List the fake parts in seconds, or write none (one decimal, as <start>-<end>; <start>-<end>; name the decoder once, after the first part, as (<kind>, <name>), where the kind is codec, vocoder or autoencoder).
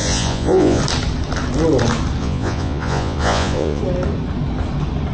0.0-0.8 (vocoder, Vocos); 2.2-3.8